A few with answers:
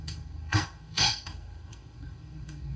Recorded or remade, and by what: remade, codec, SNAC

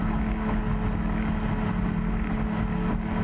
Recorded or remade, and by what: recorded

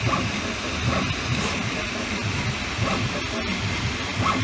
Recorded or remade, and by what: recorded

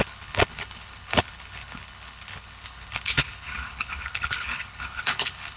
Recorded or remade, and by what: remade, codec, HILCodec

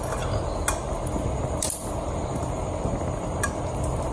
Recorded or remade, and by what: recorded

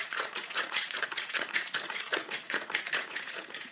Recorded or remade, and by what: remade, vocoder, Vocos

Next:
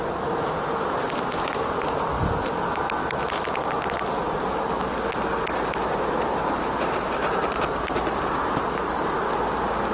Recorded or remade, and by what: recorded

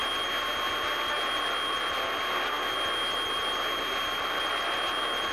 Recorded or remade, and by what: recorded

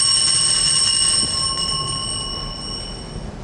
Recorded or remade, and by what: recorded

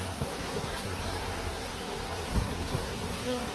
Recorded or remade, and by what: remade, codec, SNAC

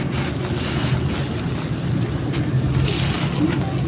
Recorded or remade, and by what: recorded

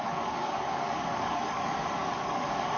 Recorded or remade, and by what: remade, codec, DAC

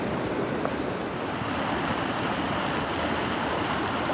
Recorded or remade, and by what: recorded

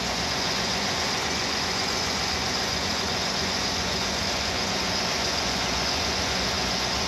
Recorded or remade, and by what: remade, vocoder, Vocos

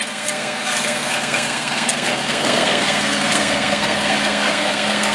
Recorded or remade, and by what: remade, codec, SNAC